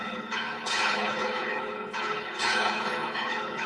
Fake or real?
fake